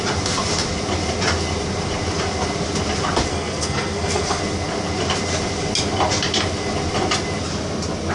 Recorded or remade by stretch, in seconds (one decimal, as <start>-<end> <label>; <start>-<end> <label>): 0.0-3.3 recorded; 3.3-4.4 remade; 4.4-8.1 recorded